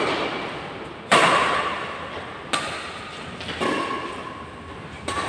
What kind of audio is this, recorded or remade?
recorded